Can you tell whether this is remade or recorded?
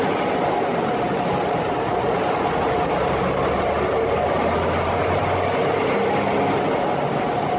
recorded